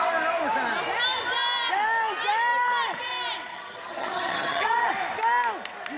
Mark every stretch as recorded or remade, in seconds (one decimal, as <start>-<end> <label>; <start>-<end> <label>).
0.0-3.5 recorded; 3.5-4.9 remade; 4.9-6.0 recorded